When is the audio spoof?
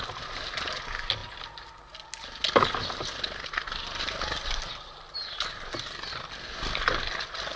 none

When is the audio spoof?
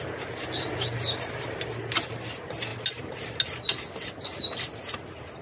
none